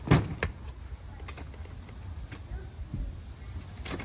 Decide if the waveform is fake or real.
real